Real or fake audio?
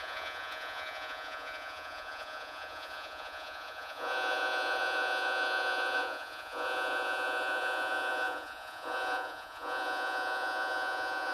fake